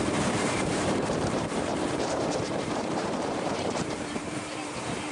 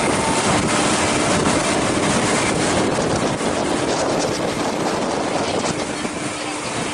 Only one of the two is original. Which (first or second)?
second